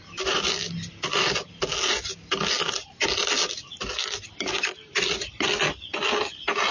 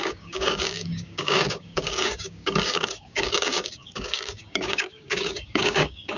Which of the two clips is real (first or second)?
first